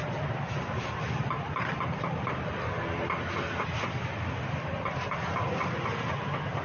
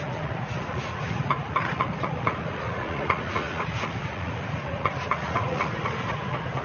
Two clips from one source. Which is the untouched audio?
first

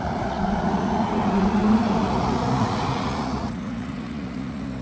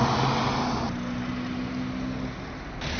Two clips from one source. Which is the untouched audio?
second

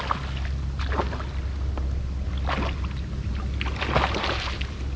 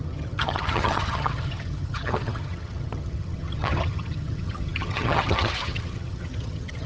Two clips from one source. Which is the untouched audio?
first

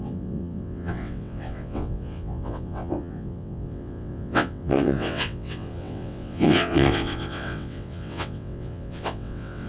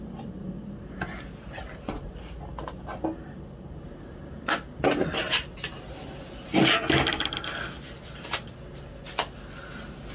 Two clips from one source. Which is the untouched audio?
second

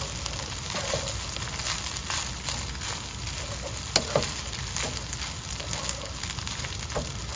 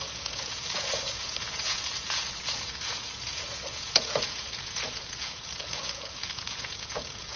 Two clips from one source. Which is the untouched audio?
first